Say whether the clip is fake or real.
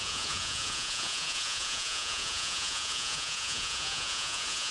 fake